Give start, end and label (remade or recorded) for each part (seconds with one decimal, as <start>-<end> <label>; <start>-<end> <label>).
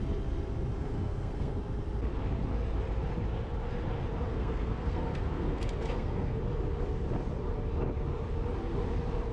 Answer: 0.0-0.8 recorded; 0.8-1.6 remade; 1.6-4.3 recorded; 4.3-6.4 remade; 6.4-9.3 recorded